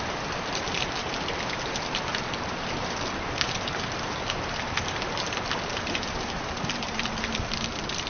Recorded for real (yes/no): no